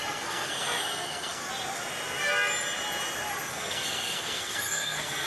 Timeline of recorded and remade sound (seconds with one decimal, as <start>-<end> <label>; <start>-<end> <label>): 0.0-1.4 remade; 1.4-3.5 recorded; 3.5-5.3 remade